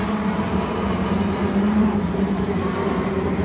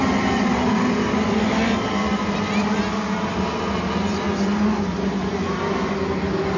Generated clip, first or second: first